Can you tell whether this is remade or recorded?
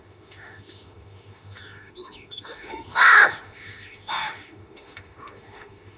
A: remade